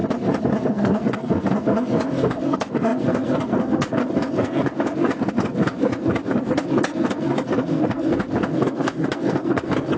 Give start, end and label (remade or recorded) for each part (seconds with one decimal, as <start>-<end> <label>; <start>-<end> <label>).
0.0-0.6 recorded; 0.6-10.0 remade